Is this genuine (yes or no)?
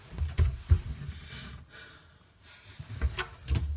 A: yes